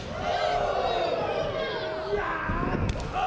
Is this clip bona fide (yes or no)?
yes